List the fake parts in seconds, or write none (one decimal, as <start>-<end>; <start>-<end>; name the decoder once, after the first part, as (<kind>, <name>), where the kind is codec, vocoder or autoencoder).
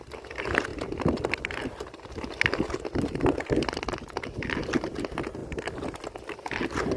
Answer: 5.4-6.5 (vocoder, BigVGAN v2)